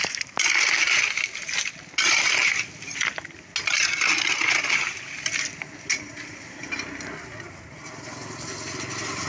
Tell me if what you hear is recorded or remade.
recorded